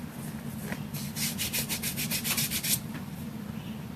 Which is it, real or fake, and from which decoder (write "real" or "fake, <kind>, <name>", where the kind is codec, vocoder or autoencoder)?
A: real